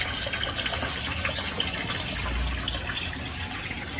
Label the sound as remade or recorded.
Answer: recorded